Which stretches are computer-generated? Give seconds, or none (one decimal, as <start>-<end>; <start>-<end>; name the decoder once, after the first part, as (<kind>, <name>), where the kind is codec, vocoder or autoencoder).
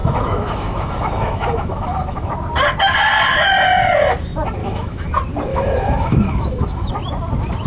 0.0-2.3 (autoencoder, DAC-VAE); 4.6-5.1; 5.5-6.9